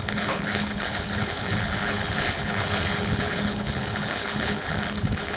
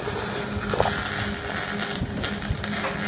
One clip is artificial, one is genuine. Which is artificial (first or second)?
first